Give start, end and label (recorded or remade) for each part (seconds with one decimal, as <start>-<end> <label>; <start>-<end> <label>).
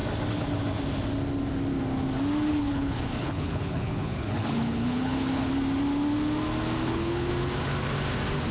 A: 0.0-2.5 recorded; 2.5-5.5 remade; 5.5-6.8 recorded; 6.8-7.3 remade; 7.3-8.5 recorded